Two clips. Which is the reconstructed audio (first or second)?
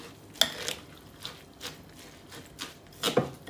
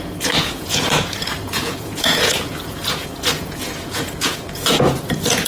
second